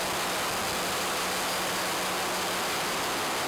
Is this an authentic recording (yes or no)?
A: yes